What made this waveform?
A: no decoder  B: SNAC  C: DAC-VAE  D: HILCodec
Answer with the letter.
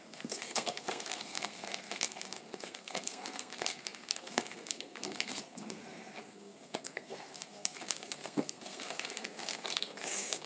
B